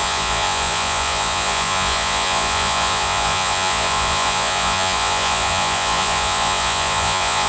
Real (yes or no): no